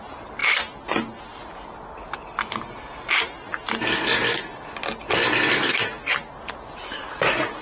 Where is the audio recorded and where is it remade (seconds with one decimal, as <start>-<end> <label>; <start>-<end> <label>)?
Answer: 0.0-7.6 recorded